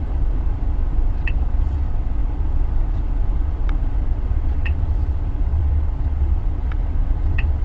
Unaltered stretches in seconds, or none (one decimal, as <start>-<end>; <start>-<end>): none